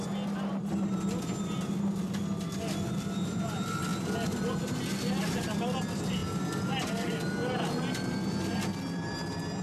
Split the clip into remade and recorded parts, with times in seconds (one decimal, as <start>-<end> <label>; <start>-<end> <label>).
0.0-9.6 recorded